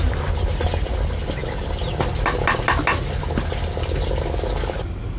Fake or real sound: real